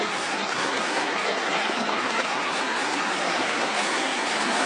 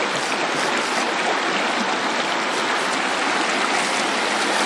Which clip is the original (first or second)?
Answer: second